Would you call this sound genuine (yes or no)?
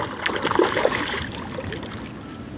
yes